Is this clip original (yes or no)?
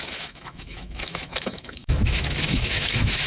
no